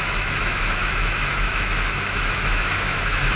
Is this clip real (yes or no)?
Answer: no